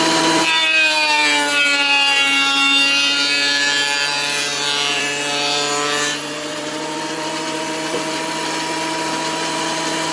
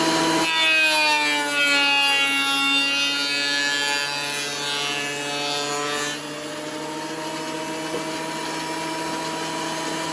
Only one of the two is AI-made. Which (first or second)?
first